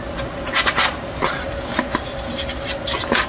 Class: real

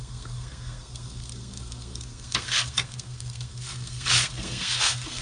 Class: fake